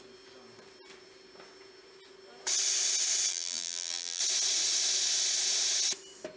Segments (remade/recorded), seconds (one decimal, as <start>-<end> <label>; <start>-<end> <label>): 0.0-3.3 recorded; 3.3-4.2 remade; 4.2-6.4 recorded